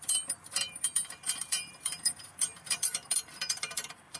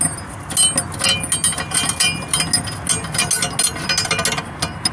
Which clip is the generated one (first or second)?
first